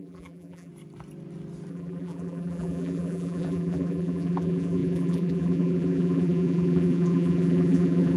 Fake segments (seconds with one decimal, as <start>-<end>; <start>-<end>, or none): 0.0-0.7; 1.7-8.2